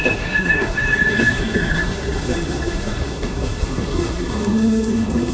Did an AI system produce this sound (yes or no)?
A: yes